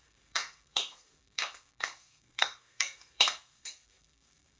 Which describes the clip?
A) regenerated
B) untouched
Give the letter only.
A